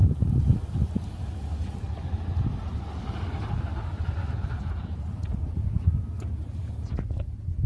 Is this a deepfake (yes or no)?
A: no